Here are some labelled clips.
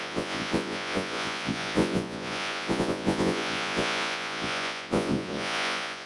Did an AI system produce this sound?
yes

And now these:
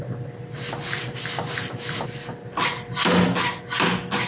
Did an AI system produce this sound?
no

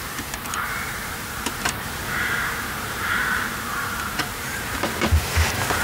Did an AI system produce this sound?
yes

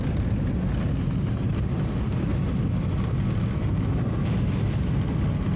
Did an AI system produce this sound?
no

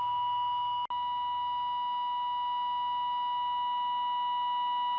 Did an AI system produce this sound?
no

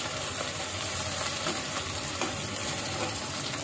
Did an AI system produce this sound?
no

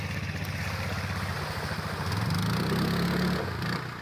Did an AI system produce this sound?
no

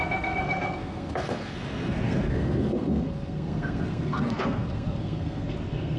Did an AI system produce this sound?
yes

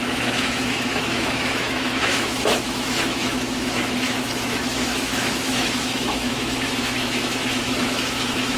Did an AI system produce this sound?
yes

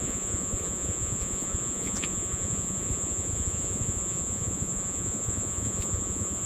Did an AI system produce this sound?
yes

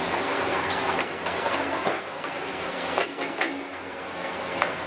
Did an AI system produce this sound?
yes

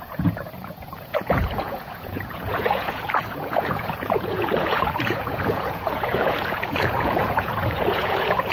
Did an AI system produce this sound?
yes